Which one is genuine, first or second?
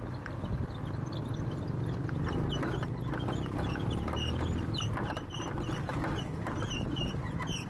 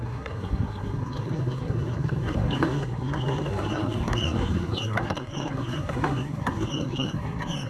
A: first